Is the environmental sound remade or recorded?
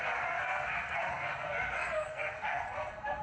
remade